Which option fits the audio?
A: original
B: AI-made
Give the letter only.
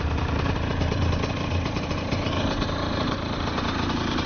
B